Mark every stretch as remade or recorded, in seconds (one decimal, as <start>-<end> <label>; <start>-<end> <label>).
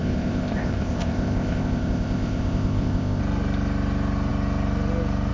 0.0-3.2 remade; 3.2-5.3 recorded